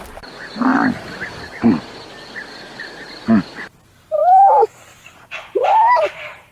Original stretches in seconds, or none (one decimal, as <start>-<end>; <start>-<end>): 0.0-6.5